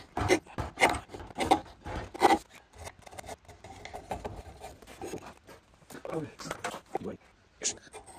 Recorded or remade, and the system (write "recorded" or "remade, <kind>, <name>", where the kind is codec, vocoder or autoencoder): recorded